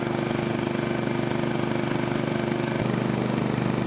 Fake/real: real